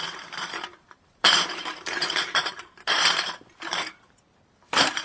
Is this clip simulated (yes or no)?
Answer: yes